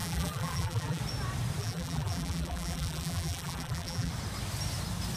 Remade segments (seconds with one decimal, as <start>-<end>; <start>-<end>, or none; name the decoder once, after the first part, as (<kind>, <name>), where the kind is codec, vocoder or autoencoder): 0.0-1.0 (vocoder, BigVGAN v2); 1.6-4.1

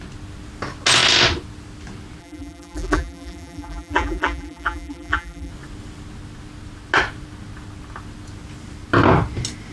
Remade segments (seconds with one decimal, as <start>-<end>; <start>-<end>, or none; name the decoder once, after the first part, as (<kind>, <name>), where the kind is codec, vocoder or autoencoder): 2.2-5.5 (vocoder, BigVGAN v2)

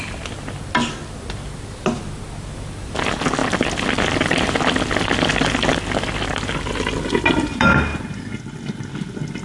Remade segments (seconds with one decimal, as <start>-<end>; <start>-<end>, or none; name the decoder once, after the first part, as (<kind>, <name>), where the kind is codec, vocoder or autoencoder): none

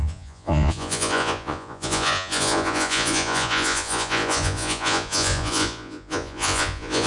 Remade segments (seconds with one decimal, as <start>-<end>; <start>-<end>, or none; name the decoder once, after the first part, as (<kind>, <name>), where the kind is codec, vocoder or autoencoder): 0.0-7.1 (vocoder, Vocos)

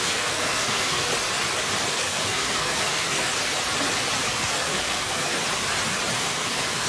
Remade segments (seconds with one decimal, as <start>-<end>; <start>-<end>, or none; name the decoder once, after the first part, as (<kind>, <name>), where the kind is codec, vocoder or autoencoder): 0.0-1.1 (codec, SNAC); 1.9-3.3; 4.2-5.3; 6.1-6.9

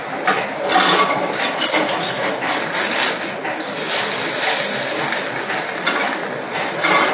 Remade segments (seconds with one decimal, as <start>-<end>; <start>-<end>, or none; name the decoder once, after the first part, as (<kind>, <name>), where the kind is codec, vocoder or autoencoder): none

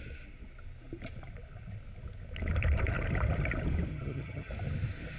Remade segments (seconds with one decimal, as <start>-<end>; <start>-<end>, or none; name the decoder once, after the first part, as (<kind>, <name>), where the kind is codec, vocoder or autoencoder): 3.9-4.5 (vocoder, HiFi-GAN)

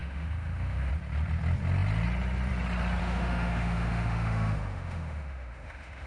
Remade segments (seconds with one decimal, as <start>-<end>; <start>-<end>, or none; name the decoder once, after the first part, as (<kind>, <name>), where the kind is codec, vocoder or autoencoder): 0.0-0.9 (autoencoder, DAC-VAE); 3.0-6.1